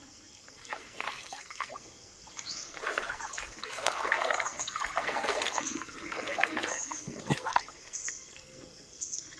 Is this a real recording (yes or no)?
no